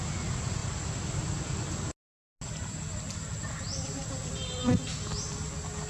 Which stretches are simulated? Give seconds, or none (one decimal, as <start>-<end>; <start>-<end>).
none